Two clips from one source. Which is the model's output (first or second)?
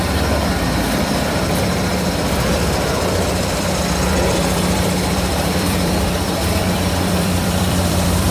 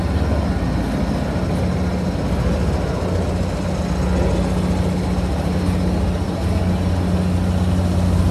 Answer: first